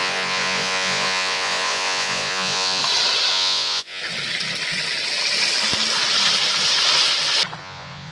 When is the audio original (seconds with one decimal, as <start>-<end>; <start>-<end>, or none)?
2.8-3.3; 4.0-7.6

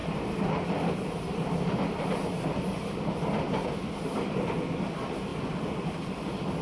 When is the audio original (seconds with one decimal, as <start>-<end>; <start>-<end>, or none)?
2.9-6.6

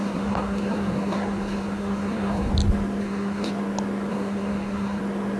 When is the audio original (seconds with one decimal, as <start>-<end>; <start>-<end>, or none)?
2.5-3.0; 3.5-4.1; 5.0-5.4

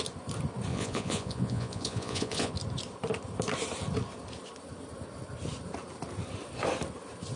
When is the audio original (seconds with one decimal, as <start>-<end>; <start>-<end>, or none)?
0.0-0.7; 2.5-7.4